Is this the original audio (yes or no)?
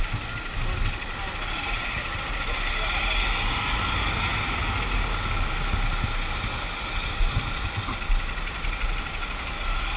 yes